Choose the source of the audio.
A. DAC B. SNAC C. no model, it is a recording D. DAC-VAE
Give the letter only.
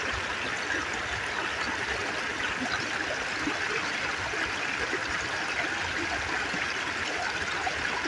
C